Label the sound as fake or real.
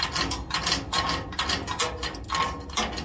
real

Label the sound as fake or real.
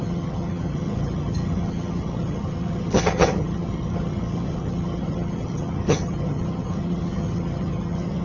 fake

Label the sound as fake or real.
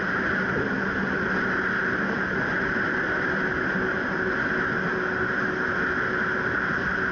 real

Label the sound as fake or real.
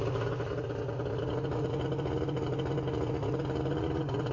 real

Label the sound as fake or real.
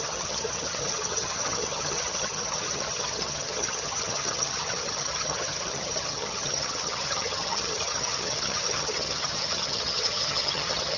fake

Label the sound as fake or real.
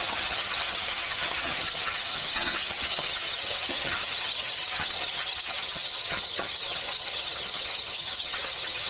fake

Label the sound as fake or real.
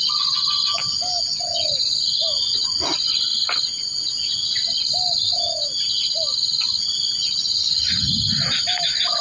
real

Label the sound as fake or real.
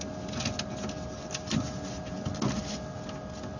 real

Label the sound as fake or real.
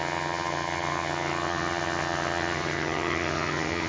fake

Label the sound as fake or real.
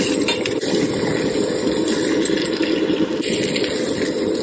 real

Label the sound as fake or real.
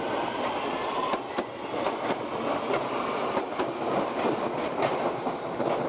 real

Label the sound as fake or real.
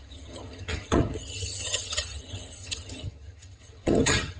fake